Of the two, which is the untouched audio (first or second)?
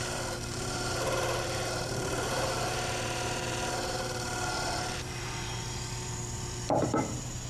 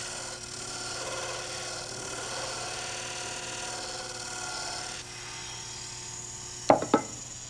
second